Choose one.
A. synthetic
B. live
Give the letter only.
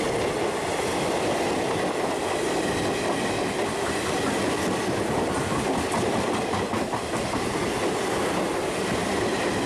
B